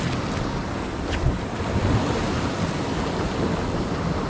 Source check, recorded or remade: recorded